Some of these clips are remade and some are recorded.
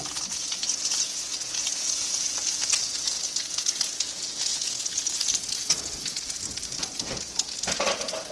remade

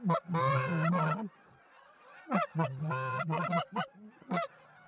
remade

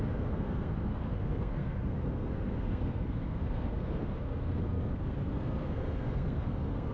remade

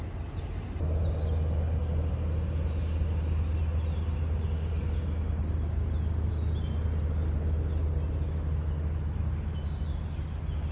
recorded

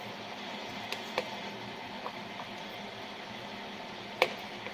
recorded